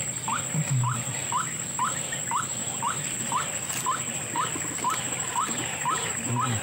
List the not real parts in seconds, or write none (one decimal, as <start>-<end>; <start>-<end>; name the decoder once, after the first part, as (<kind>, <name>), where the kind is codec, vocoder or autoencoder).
2.6-3.3 (vocoder, BigVGAN v2); 5.3-6.1